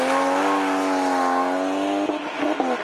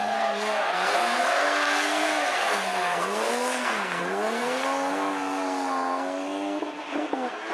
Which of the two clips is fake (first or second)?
second